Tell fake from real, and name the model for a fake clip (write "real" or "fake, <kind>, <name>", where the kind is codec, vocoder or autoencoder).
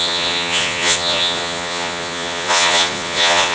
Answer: fake, vocoder, Vocos